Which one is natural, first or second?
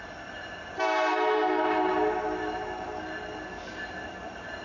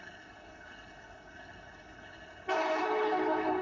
first